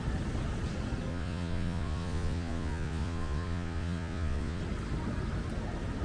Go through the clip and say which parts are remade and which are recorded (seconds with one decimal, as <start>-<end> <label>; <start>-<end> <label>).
0.0-1.1 recorded; 1.1-4.6 remade; 4.6-6.0 recorded